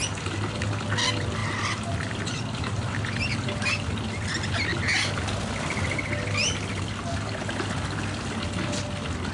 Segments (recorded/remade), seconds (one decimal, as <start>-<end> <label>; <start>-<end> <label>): 0.0-9.3 recorded